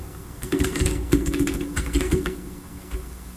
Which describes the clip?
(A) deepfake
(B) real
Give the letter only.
A